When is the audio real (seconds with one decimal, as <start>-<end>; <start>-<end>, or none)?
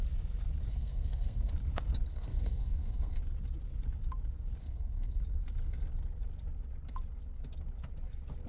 0.0-0.7; 1.5-2.1; 3.2-4.6; 5.2-8.5